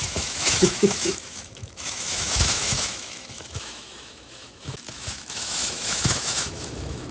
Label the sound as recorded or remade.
remade